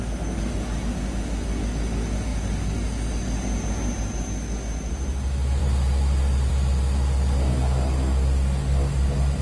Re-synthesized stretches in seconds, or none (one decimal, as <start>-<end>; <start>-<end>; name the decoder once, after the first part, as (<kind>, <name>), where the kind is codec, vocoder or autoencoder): none